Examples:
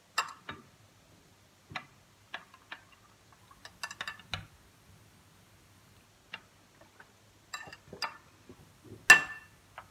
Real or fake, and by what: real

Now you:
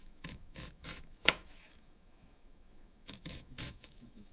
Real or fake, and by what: fake, autoencoder, DAC-VAE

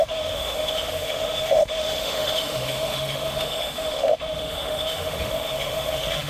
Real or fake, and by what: fake, autoencoder, DAC-VAE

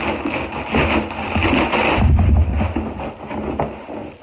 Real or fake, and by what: real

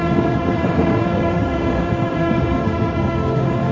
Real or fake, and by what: fake, autoencoder, DAC-VAE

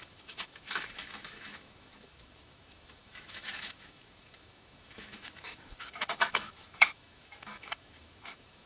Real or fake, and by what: fake, autoencoder, DAC-VAE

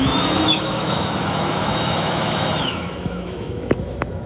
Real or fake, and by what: fake, autoencoder, DAC-VAE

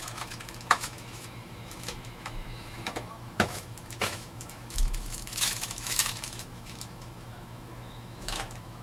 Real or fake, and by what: fake, autoencoder, DAC-VAE